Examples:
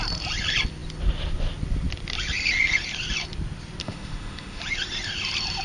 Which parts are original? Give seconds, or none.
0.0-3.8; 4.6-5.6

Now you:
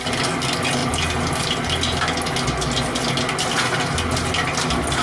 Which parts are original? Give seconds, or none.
0.0-5.0

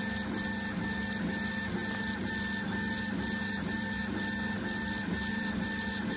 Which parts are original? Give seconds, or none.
0.0-6.2

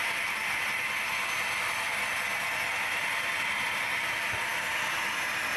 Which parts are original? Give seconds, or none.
0.0-5.6

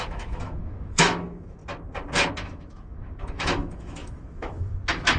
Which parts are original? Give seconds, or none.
1.6-2.3

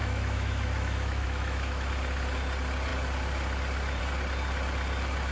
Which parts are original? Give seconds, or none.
1.9-5.3